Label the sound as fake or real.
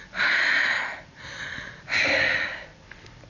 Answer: real